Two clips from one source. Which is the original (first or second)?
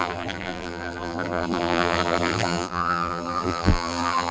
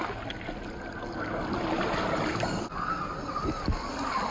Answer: second